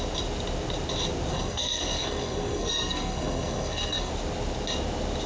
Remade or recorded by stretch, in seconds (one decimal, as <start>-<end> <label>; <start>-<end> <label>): 0.0-1.3 recorded; 1.3-4.1 remade; 4.1-5.3 recorded